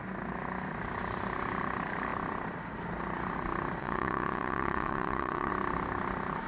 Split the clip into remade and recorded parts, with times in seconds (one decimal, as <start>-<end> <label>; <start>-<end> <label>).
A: 0.0-3.8 recorded; 3.8-5.5 remade; 5.5-6.5 recorded